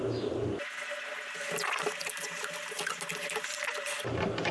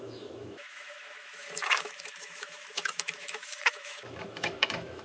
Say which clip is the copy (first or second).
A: second